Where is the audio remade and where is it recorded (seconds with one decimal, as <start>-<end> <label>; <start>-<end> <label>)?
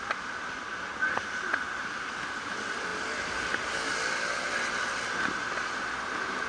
0.0-6.5 recorded